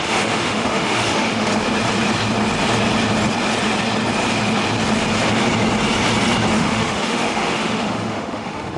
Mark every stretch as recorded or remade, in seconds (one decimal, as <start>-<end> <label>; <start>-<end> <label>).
0.0-1.5 remade; 1.5-6.5 recorded; 6.5-8.8 remade